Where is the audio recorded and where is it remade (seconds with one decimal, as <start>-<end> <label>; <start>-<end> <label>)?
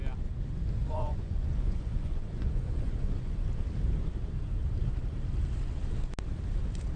0.0-0.8 recorded; 0.8-3.5 remade; 3.5-7.0 recorded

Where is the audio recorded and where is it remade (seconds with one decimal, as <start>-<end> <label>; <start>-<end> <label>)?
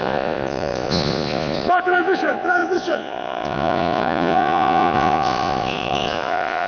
0.0-6.7 remade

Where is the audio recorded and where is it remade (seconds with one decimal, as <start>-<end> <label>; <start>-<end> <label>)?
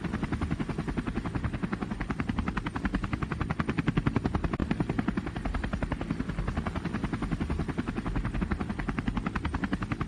0.0-10.1 recorded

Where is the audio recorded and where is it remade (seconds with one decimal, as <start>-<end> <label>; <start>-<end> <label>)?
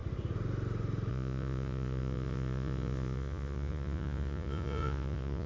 0.0-1.1 recorded; 1.1-5.5 remade